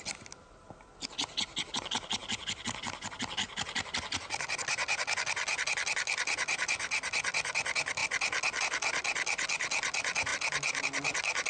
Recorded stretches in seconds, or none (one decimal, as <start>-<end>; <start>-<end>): 0.0-11.5